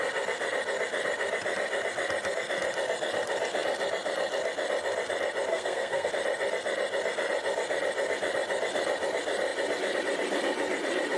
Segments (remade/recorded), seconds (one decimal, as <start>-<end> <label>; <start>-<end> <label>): 0.0-5.5 recorded; 5.5-6.1 remade; 6.1-11.2 recorded